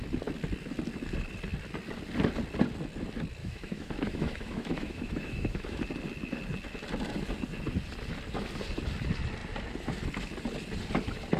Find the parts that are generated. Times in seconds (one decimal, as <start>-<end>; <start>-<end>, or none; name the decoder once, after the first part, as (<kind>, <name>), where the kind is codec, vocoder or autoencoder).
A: 3.4-5.8 (autoencoder, DAC-VAE)